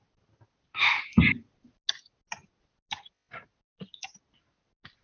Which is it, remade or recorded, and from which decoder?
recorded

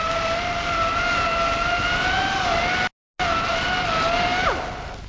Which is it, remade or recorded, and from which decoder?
recorded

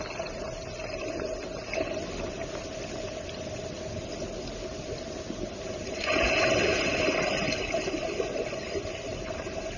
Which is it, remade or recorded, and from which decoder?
recorded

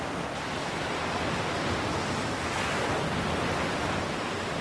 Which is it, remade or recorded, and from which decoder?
recorded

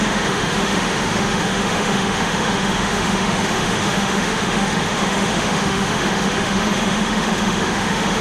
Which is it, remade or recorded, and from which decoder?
remade, autoencoder, DAC-VAE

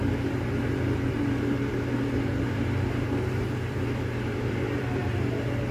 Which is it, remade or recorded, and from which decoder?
remade, vocoder, BigVGAN v2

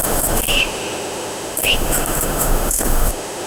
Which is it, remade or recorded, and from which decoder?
remade, autoencoder, DAC-VAE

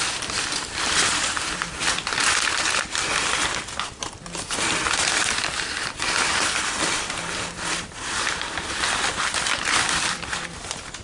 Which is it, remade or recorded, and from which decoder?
remade, vocoder, BigVGAN v2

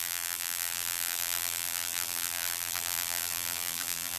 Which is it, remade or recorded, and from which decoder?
remade, vocoder, BigVGAN v2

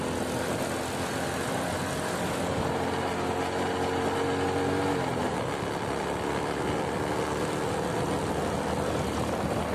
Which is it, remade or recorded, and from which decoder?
recorded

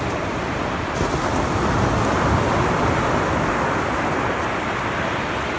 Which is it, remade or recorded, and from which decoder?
recorded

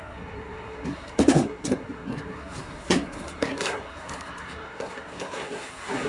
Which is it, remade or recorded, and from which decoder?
remade, codec, SNAC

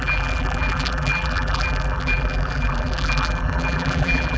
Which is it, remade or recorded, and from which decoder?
remade, vocoder, BigVGAN v2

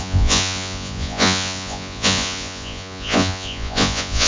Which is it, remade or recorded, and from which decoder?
remade, vocoder, Vocos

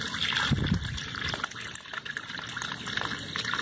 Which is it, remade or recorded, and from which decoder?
recorded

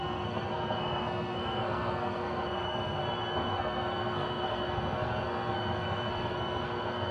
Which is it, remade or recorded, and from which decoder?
remade, codec, SNAC